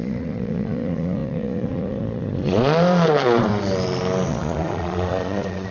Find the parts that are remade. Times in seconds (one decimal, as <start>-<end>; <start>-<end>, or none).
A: 0.0-3.5; 4.3-5.7